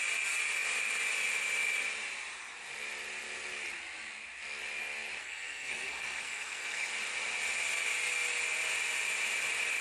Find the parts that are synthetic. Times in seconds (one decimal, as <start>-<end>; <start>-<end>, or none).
5.2-6.9

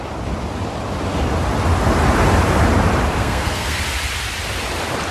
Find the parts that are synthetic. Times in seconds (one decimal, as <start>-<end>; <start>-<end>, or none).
3.2-3.8

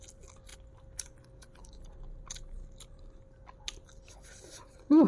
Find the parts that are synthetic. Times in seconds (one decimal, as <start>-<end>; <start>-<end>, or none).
none

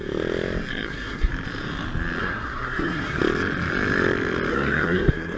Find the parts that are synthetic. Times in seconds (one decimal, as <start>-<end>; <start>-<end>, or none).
0.7-1.3; 2.2-3.2; 4.5-5.4

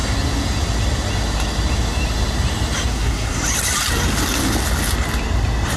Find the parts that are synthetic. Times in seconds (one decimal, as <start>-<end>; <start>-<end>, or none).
2.9-3.4